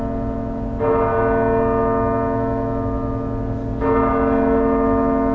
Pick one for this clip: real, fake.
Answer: real